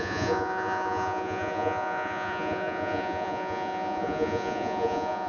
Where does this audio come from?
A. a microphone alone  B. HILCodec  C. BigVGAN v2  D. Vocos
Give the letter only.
D